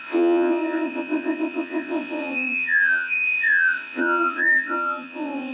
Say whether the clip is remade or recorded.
remade